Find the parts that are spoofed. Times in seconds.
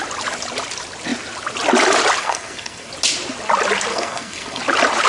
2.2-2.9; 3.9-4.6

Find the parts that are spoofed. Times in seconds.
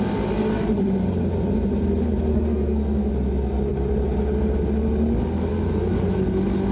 2.3-3.1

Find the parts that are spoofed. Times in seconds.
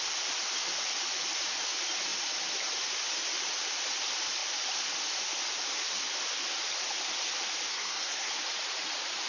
7.7-8.3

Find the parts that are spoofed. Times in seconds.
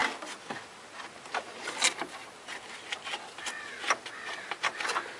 none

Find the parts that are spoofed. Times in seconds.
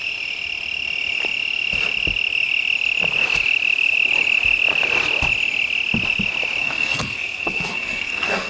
6.6-8.5